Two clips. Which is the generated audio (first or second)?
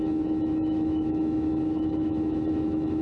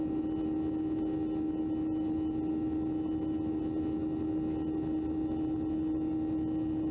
first